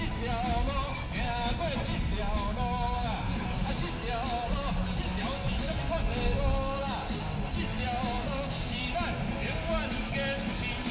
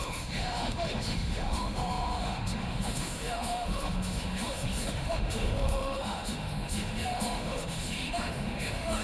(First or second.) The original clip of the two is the first